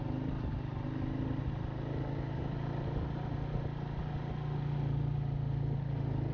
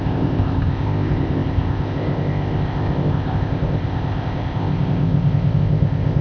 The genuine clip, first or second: first